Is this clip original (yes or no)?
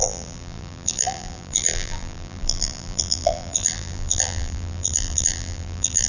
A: no